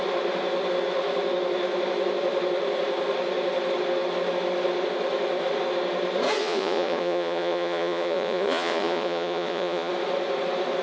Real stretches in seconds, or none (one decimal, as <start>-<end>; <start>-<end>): 0.0-6.4; 9.9-10.8